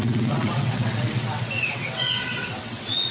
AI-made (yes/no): yes